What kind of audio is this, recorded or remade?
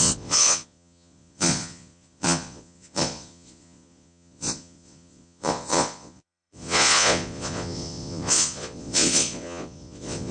remade